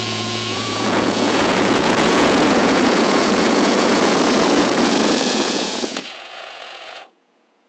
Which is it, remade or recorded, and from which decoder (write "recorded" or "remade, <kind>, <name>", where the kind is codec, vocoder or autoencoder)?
remade, vocoder, Vocos